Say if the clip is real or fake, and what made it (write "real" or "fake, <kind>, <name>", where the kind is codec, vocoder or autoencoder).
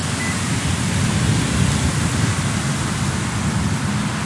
real